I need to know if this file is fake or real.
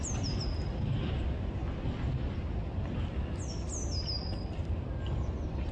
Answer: real